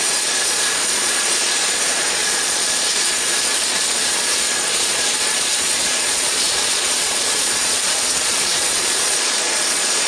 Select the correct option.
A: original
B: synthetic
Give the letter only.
B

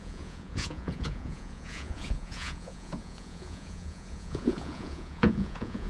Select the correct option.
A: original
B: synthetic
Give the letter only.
B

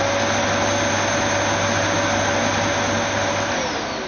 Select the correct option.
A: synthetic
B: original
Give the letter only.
B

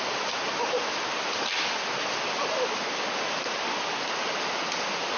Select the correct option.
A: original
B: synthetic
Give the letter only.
A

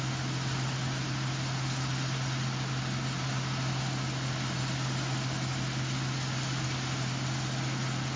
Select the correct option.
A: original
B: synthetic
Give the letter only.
A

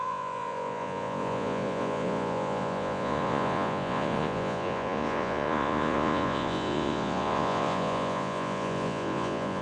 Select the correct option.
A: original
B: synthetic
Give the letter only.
B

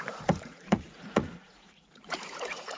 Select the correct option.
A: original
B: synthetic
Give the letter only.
B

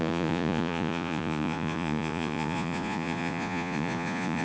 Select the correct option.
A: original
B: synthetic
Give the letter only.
B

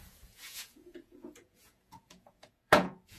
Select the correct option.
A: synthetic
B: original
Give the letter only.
A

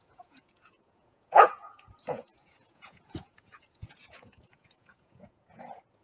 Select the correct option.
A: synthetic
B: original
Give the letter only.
A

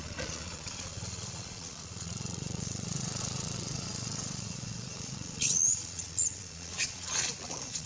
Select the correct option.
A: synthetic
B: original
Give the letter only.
A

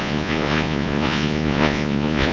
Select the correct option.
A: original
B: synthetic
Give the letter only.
B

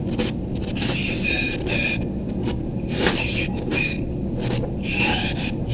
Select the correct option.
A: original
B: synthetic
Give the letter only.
A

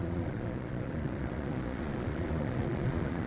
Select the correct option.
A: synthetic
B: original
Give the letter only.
A